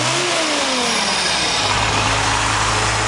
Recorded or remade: recorded